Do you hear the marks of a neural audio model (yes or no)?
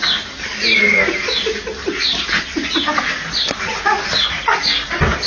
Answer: no